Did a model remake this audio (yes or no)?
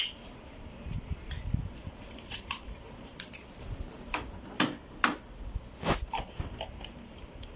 yes